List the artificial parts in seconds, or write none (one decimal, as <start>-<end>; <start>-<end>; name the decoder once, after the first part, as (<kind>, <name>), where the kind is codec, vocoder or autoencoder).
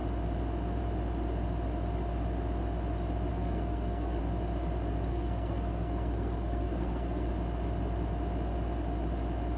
3.3-4.2 (codec, SNAC); 5.1-7.3